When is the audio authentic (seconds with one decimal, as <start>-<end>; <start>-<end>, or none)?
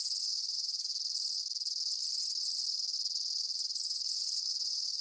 0.9-3.8